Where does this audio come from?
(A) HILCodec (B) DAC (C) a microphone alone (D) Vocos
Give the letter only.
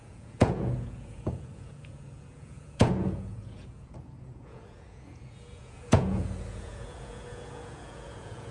D